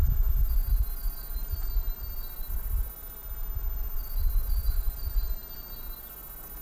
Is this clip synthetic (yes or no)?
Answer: no